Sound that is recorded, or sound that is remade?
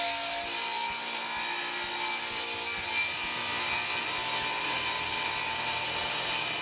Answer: recorded